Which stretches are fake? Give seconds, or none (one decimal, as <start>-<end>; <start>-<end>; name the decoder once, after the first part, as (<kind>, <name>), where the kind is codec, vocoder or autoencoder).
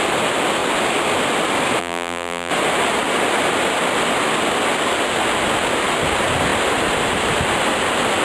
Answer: 1.8-2.5 (vocoder, BigVGAN v2)